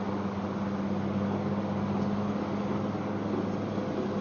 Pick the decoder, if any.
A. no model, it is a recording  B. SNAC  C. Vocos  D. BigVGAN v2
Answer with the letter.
A